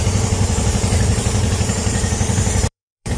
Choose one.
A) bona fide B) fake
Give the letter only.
B